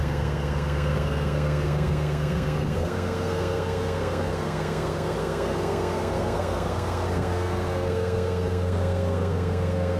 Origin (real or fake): fake